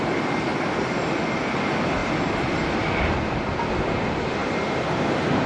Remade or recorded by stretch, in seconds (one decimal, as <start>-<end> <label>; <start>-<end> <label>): 0.0-4.4 recorded; 4.4-5.5 remade